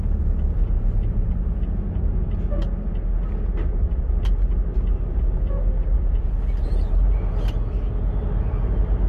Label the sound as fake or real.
real